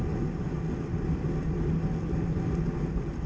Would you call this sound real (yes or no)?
yes